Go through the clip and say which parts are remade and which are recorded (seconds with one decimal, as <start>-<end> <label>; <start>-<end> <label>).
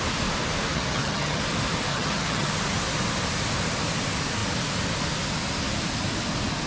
0.0-0.7 recorded; 0.7-1.4 remade; 1.4-1.9 recorded; 1.9-2.5 remade; 2.5-6.7 recorded